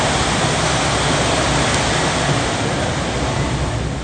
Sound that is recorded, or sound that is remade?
recorded